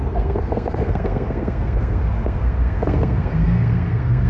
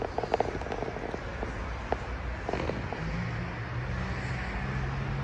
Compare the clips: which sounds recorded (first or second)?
second